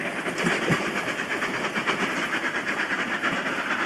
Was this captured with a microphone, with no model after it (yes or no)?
yes